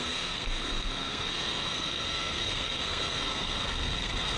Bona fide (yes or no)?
no